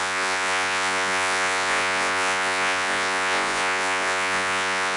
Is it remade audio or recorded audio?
remade